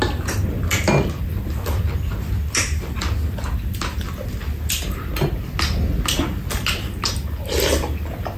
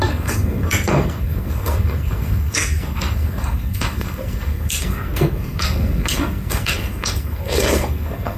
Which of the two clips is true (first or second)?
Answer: first